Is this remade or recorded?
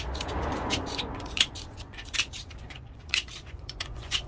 remade